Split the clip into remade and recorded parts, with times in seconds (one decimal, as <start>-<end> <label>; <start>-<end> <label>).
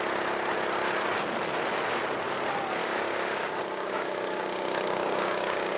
0.0-2.8 recorded; 2.8-5.8 remade